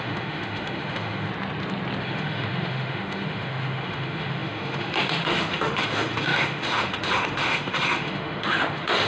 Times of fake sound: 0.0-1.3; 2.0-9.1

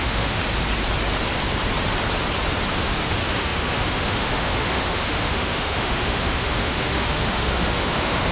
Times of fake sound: 0.0-0.4; 2.8-8.3

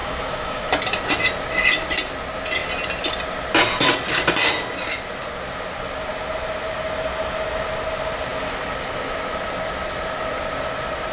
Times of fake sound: 0.0-0.7

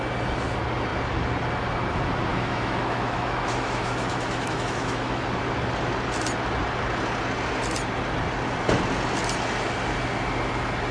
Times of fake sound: 2.3-5.2